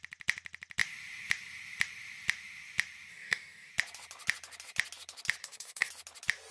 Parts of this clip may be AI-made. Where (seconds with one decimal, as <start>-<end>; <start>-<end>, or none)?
3.1-3.7; 5.4-5.9